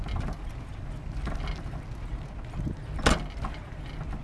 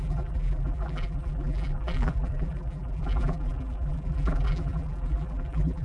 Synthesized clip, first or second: second